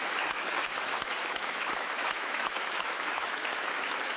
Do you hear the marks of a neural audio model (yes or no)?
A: yes